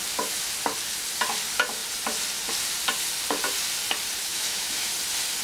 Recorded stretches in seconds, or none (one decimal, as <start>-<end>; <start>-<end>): 0.0-4.2; 4.9-5.4